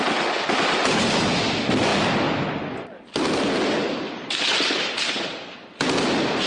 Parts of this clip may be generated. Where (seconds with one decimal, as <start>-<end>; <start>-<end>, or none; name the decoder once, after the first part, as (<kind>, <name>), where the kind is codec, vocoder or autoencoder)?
none